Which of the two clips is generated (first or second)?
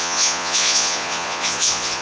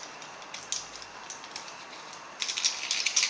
first